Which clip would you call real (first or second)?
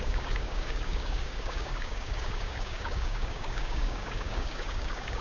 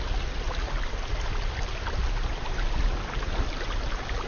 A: second